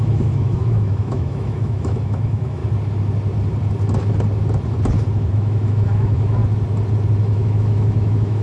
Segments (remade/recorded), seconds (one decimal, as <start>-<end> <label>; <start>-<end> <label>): 0.0-2.6 remade; 2.6-5.3 recorded; 5.3-6.4 remade; 6.4-7.2 recorded; 7.2-8.4 remade